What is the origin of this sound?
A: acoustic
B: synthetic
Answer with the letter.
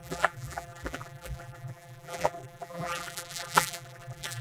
B